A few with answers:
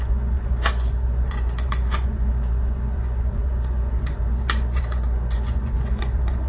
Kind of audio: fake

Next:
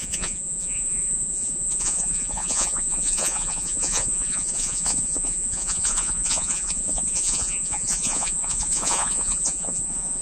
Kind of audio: fake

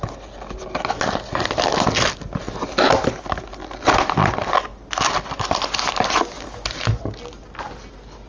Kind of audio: real